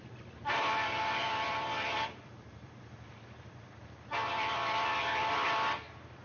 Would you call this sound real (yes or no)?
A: no